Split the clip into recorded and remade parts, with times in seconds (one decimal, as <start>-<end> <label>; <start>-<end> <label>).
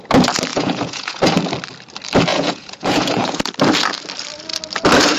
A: 0.0-0.5 recorded; 0.5-1.2 remade; 1.2-2.3 recorded; 2.3-3.4 remade; 3.4-5.2 recorded